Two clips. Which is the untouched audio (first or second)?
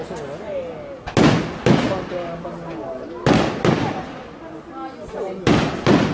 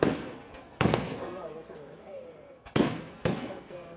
first